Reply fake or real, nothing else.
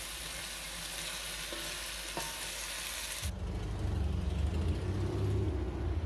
real